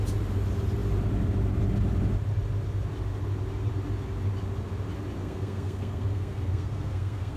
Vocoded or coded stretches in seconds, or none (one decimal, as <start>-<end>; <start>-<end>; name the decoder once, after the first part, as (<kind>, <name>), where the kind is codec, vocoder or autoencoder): 5.2-7.4 (codec, SNAC)